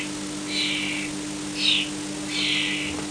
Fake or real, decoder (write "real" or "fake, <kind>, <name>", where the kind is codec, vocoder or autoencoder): real